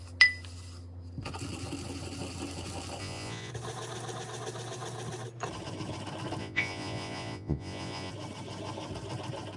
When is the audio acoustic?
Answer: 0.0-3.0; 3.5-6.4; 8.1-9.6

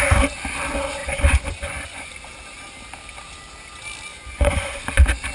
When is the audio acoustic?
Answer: 0.0-1.0; 2.1-4.1; 4.8-5.3

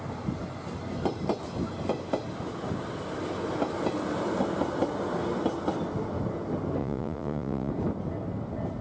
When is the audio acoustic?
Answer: 0.0-6.8; 7.7-8.8

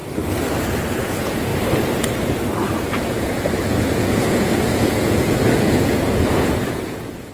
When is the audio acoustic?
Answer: 0.0-1.0; 1.5-2.9